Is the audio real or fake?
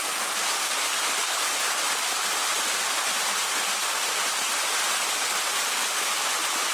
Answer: real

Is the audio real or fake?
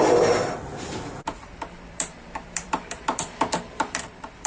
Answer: fake